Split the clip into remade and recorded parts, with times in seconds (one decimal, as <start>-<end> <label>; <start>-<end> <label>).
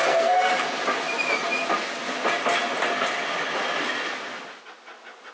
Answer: 0.0-0.5 remade; 0.5-5.3 recorded